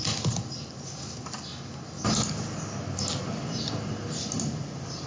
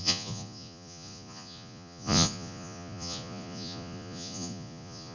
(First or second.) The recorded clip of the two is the first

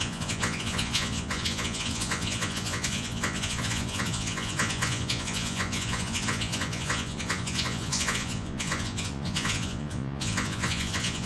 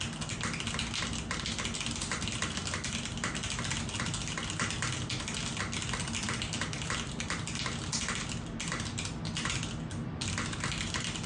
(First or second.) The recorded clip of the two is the second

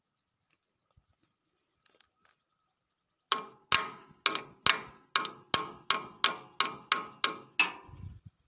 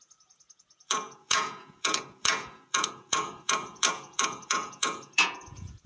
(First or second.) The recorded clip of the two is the first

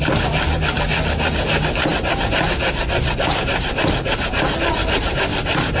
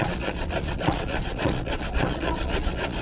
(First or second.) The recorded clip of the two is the first